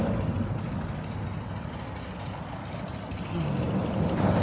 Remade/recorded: recorded